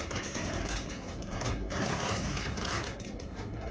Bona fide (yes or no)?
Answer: no